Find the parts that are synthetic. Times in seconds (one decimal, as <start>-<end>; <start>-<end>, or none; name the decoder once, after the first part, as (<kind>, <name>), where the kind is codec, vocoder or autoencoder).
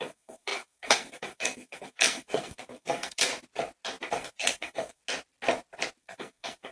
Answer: 0.0-3.3 (codec, SNAC); 4.1-5.0; 6.0-6.7